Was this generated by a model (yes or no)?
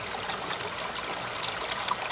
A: no